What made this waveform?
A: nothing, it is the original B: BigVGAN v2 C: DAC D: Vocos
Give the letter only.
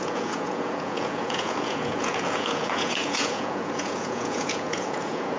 D